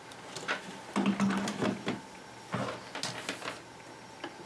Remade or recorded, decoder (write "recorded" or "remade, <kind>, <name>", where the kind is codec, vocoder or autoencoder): recorded